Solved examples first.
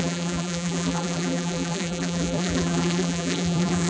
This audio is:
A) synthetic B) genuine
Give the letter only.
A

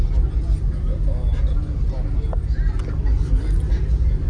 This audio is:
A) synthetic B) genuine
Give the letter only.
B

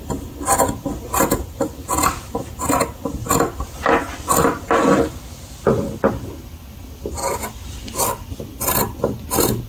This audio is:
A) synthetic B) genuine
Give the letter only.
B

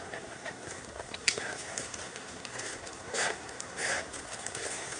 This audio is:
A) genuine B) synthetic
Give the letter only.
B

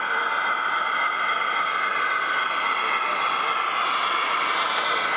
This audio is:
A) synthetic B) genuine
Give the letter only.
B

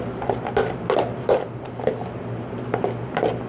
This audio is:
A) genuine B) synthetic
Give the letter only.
A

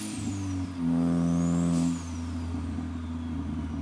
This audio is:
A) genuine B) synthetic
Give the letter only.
A